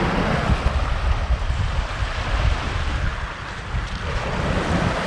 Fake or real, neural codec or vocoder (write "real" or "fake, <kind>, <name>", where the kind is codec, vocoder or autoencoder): real